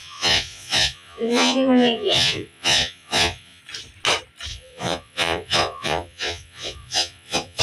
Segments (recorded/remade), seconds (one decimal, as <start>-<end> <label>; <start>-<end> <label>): 0.0-3.6 remade; 3.6-4.5 recorded; 4.5-7.6 remade

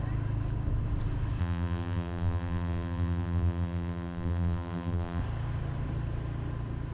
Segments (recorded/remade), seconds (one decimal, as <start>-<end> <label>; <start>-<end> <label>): 0.0-1.4 recorded; 1.4-5.2 remade; 5.2-6.9 recorded

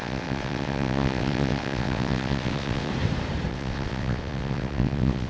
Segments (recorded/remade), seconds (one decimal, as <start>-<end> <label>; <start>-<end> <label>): 0.0-2.9 remade; 2.9-3.5 recorded; 3.5-5.3 remade

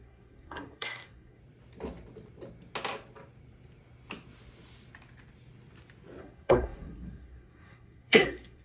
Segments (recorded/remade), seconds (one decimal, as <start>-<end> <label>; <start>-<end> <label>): 0.0-1.4 remade; 1.4-6.2 recorded; 6.2-8.6 remade

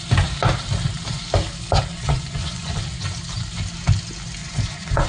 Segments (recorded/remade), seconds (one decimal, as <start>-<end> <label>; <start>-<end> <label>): 0.0-1.9 recorded; 1.9-2.8 remade; 2.8-4.4 recorded; 4.4-5.1 remade

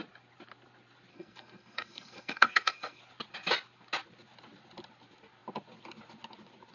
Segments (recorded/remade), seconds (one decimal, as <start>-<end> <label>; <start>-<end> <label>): 0.0-1.1 recorded; 1.1-3.0 remade; 3.0-6.7 recorded